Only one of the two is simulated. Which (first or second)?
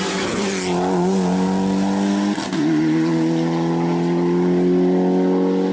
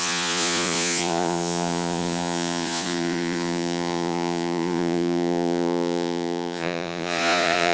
second